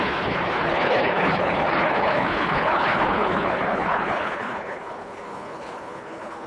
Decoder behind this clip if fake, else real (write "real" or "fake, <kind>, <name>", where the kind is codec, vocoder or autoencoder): fake, codec, HILCodec